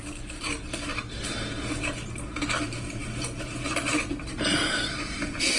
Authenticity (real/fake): fake